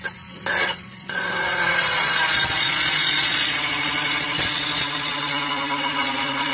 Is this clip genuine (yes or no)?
no